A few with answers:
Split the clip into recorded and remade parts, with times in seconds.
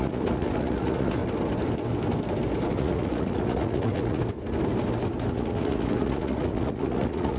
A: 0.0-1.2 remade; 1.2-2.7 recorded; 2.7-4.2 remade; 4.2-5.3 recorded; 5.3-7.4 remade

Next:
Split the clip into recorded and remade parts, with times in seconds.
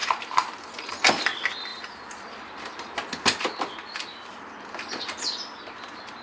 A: 0.0-0.9 remade; 0.9-6.2 recorded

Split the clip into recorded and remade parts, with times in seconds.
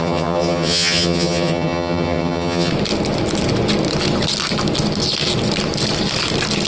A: 0.0-2.7 remade; 2.7-6.7 recorded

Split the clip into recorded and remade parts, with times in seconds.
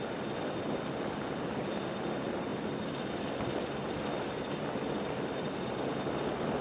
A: 0.0-6.6 recorded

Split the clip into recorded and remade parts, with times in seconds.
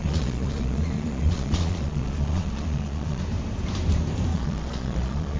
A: 0.0-3.2 remade; 3.2-4.3 recorded; 4.3-5.4 remade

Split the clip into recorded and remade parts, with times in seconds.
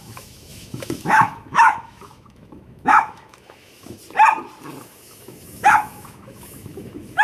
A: 0.0-4.0 remade; 4.0-4.8 recorded; 4.8-7.2 remade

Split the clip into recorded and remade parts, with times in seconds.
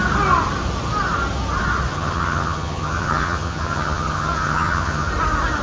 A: 0.0-1.9 recorded; 1.9-5.1 remade; 5.1-5.6 recorded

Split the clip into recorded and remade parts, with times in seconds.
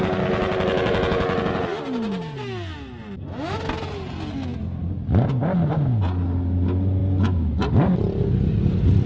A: 0.0-9.1 recorded